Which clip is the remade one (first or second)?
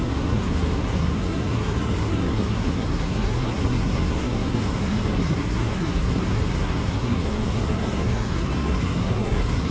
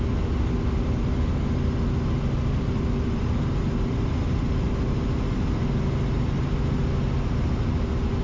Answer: first